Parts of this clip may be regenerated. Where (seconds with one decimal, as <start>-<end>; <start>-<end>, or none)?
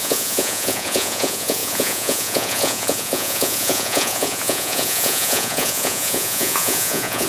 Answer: 0.0-7.3